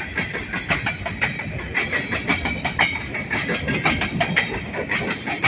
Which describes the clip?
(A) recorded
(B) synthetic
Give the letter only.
A